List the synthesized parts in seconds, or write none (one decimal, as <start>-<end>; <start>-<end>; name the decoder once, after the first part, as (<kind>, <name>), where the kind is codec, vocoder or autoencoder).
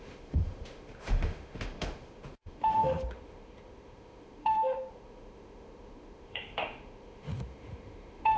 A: 0.0-8.4 (autoencoder, DAC-VAE)